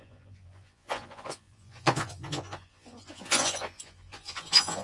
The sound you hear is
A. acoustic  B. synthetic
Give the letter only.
B